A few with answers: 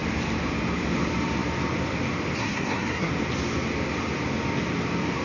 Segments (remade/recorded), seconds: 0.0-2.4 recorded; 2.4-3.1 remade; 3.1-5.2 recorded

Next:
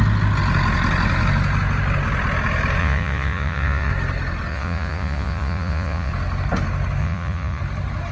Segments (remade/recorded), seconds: 0.0-2.8 recorded; 2.8-3.9 remade; 3.9-4.5 recorded; 4.5-6.1 remade; 6.1-7.0 recorded; 7.0-7.6 remade; 7.6-8.1 recorded

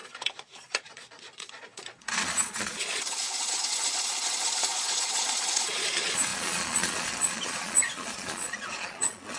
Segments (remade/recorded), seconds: 0.0-9.4 remade